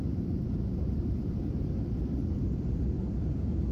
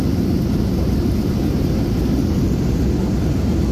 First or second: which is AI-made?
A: first